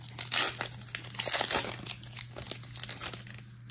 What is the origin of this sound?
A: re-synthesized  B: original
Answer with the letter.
B